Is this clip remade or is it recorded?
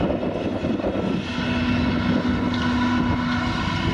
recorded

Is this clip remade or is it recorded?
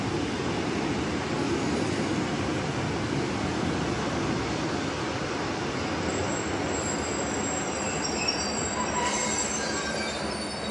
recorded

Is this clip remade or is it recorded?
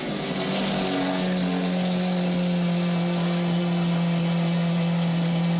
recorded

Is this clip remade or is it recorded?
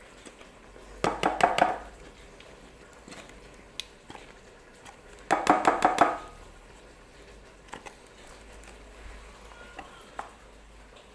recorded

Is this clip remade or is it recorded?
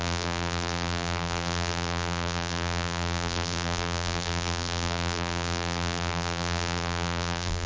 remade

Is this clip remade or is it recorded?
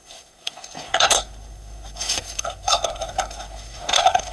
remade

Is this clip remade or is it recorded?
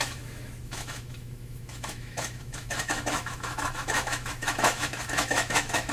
remade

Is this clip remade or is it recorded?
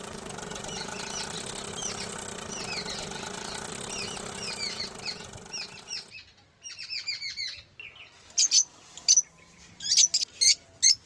recorded